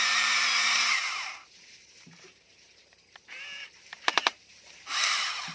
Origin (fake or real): fake